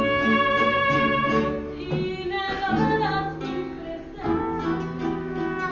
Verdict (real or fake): real